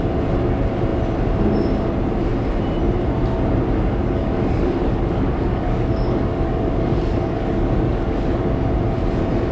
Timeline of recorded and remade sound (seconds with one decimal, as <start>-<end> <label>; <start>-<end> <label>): 0.0-3.9 recorded; 3.9-8.2 remade; 8.2-9.5 recorded